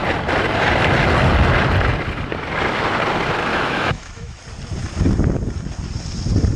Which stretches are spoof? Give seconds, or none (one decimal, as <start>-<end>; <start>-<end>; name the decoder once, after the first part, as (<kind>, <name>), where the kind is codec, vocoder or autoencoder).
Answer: 3.5-4.4 (autoencoder, DAC-VAE)